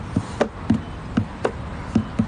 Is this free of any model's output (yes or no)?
yes